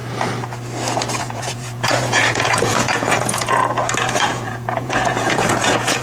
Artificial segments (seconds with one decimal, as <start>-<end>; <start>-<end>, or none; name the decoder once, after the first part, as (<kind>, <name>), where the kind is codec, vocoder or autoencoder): 1.2-3.6 (vocoder, Vocos); 4.1-6.0